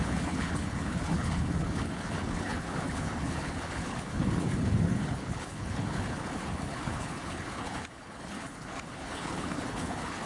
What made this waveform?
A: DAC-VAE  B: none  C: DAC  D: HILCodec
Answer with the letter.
D